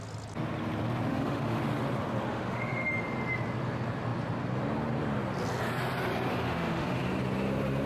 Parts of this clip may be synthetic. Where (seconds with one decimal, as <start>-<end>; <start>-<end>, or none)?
1.1-1.6; 2.3-2.9; 6.3-7.0